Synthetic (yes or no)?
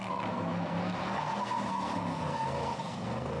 yes